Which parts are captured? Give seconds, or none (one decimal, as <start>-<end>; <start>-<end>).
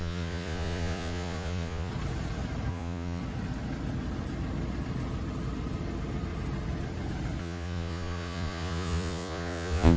1.9-2.7; 3.2-7.4